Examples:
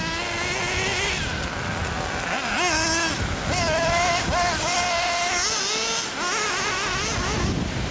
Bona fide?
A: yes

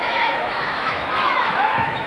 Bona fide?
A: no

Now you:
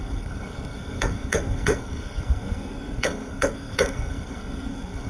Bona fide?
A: no